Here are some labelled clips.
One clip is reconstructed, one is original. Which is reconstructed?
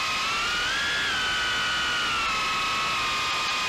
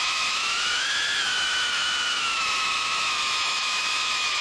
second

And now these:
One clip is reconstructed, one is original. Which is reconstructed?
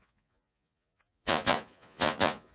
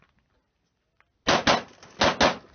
first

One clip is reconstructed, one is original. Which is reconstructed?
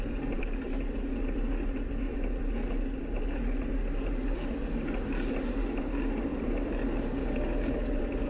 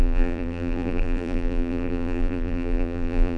second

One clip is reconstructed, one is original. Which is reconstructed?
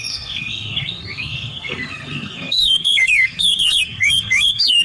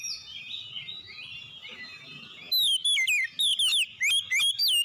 first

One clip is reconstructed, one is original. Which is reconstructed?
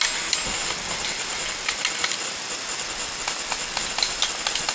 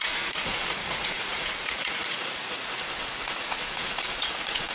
second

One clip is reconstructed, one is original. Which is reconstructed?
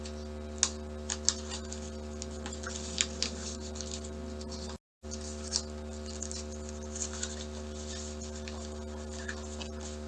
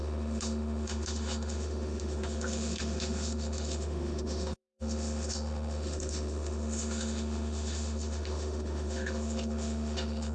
second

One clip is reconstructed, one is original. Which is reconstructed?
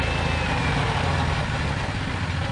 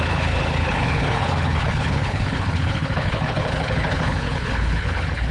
second